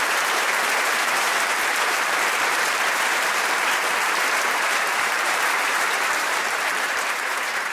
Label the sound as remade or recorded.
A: remade